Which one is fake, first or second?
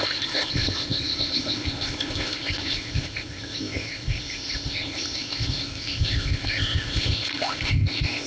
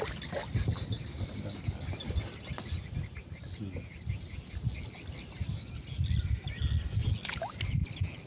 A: first